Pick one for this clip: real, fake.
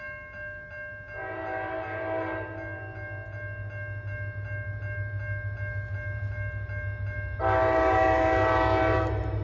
real